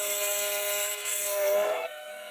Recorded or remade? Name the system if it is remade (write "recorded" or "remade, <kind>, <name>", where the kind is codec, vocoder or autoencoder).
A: remade, codec, SNAC